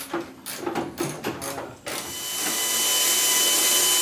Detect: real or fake real